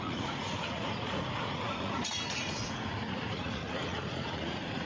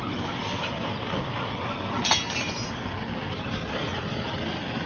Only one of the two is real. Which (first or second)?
second